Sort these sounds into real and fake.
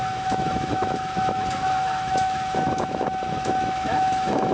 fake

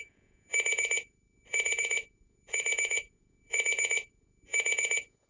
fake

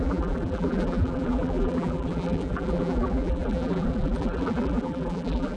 fake